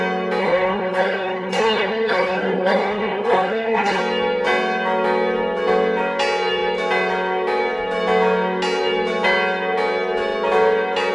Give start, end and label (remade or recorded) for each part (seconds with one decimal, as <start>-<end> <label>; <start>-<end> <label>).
0.0-0.4 recorded; 0.4-4.0 remade; 4.0-11.1 recorded